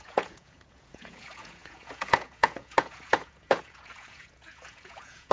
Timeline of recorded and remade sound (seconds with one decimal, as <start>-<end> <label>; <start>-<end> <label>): 0.0-5.3 remade